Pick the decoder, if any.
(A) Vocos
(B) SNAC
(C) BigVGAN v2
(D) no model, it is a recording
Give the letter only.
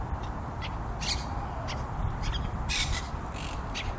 D